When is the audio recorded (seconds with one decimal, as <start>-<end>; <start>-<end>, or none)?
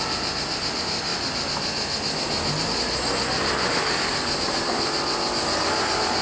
1.1-4.4